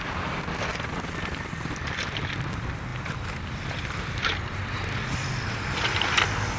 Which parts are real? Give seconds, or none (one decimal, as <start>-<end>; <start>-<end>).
0.0-0.7; 1.4-2.9; 4.3-6.6